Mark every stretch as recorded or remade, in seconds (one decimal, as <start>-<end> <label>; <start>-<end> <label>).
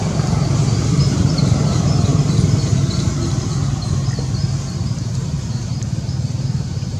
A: 0.0-2.1 remade; 2.1-6.3 recorded; 6.3-7.0 remade